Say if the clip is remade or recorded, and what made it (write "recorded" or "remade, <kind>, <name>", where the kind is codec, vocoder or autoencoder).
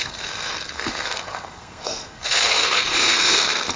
remade, codec, SNAC